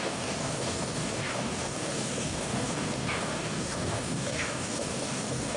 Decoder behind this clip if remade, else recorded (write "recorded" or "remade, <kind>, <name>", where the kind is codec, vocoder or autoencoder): remade, codec, DAC